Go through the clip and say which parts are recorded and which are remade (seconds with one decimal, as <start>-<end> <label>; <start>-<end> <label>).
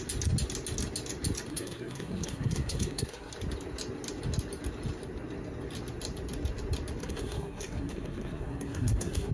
0.0-1.5 recorded; 1.5-3.3 remade; 3.3-7.0 recorded; 7.0-9.3 remade